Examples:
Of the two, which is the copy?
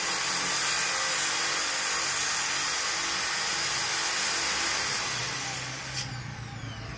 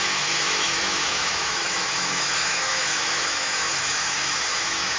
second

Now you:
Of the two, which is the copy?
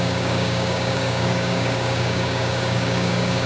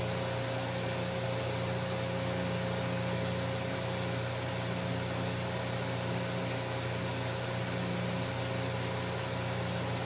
first